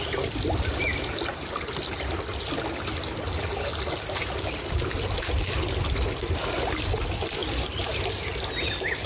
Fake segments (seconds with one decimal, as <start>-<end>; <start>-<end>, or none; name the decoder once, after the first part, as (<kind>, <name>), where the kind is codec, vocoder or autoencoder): none